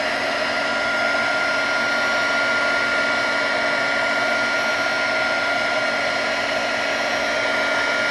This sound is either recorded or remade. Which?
recorded